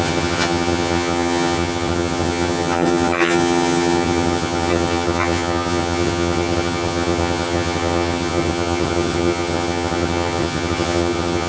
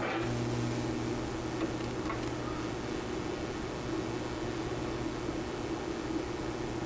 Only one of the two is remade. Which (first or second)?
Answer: first